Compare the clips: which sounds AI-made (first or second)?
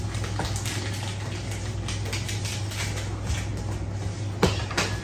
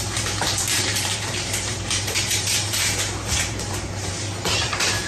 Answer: second